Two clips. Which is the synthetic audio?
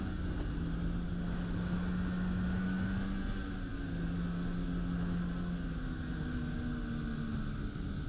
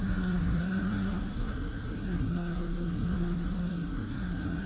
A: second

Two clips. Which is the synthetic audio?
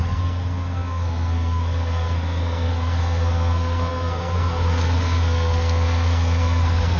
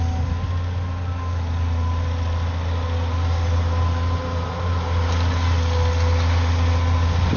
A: first